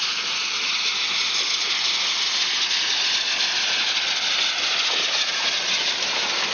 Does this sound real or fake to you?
real